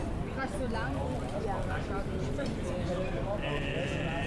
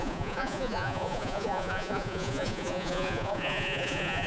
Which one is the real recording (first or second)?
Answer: first